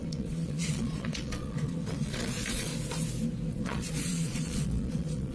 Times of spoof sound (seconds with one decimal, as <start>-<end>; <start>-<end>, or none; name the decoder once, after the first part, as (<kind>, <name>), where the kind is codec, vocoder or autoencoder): 0.0-2.7 (vocoder, Vocos); 3.5-5.3